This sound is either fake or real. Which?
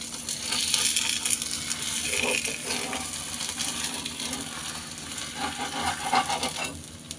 real